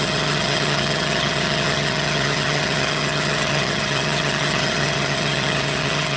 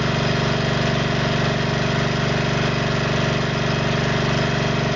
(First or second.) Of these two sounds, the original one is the second